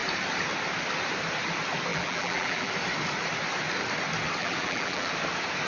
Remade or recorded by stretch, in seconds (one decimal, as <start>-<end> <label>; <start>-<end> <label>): 0.0-1.9 recorded; 1.9-2.7 remade; 2.7-4.4 recorded; 4.4-5.1 remade; 5.1-5.7 recorded